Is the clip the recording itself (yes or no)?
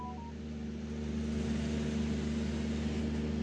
yes